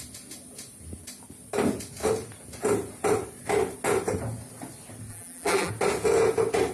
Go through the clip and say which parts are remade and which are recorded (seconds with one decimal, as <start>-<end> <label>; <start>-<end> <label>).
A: 0.0-5.1 recorded; 5.1-5.7 remade; 5.7-6.7 recorded